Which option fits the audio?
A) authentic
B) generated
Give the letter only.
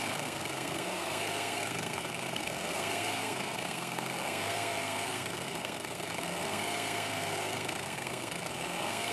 B